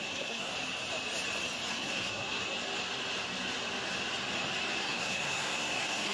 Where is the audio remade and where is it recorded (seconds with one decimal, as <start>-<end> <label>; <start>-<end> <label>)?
0.0-0.5 remade; 0.5-1.7 recorded; 1.7-2.4 remade; 2.4-4.8 recorded; 4.8-6.1 remade